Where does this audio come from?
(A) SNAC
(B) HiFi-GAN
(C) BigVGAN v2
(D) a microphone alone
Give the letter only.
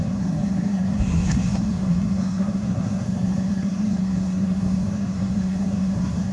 A